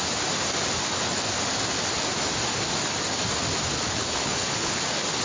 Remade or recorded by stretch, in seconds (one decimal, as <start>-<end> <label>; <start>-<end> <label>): 0.0-4.0 recorded; 4.0-4.7 remade; 4.7-5.2 recorded